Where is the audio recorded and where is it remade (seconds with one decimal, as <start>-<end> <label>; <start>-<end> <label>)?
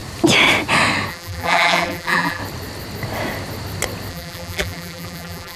0.0-1.1 recorded; 1.1-2.4 remade; 2.4-4.1 recorded; 4.1-5.6 remade